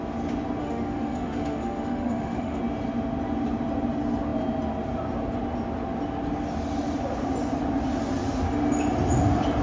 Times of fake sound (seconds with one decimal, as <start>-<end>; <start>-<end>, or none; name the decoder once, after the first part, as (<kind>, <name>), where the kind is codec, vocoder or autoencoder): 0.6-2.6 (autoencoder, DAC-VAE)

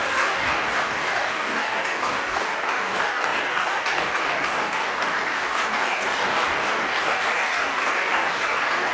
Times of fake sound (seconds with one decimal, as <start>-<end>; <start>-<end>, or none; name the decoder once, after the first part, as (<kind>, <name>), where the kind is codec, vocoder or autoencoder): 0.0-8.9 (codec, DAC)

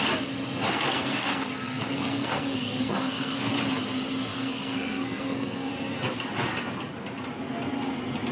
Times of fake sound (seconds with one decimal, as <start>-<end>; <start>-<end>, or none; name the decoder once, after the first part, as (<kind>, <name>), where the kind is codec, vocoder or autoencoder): 0.7-3.5 (codec, SNAC); 4.3-5.7

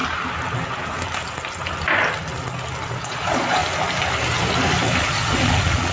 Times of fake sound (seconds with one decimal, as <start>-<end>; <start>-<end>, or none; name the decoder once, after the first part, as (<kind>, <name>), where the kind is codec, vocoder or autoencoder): 2.9-3.6 (vocoder, Vocos); 5.0-5.9

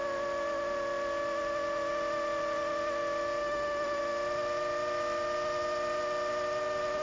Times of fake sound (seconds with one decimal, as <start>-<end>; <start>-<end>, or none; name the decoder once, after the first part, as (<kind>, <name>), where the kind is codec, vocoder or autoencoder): 3.4-4.0 (autoencoder, DAC-VAE)

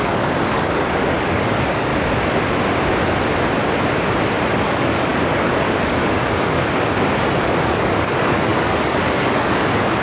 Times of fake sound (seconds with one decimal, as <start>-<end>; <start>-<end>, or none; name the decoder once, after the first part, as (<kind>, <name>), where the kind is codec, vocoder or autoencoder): 0.0-1.9 (codec, DAC); 4.6-10.0

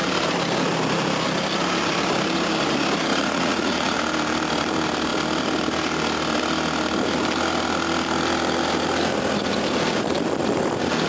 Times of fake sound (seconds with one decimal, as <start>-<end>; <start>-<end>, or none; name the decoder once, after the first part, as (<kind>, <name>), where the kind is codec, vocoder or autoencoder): 3.1-4.0 (vocoder, Vocos)